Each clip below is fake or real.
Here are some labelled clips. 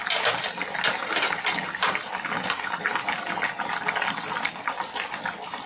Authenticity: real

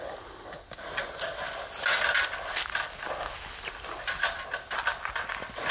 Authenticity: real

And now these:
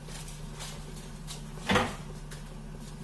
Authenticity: real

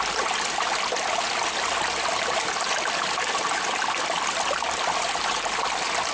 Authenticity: real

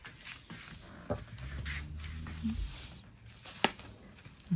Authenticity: real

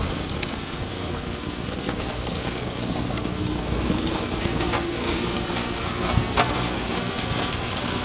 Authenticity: fake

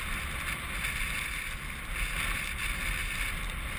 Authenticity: real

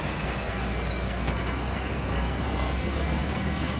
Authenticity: fake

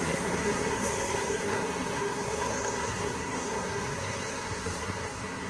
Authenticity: fake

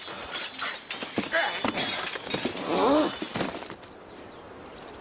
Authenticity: real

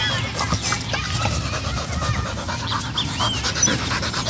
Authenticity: real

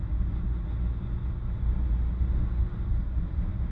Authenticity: real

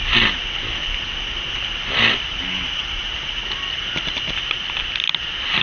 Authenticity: real